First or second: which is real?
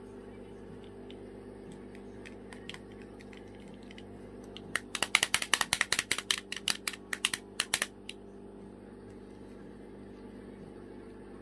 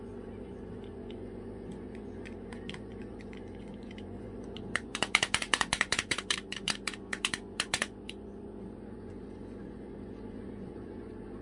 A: first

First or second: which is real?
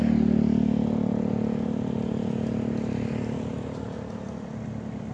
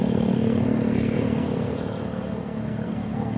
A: first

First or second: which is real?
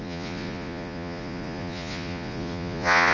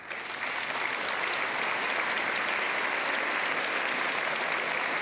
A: second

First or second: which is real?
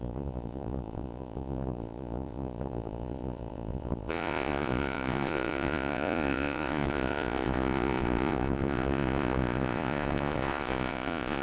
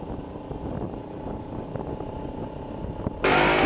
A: second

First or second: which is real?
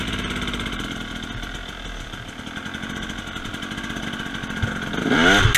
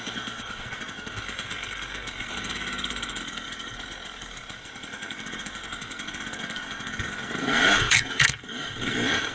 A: first